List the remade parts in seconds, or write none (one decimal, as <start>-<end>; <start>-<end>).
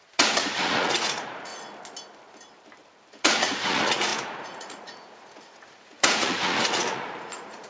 0.0-1.5; 3.1-7.7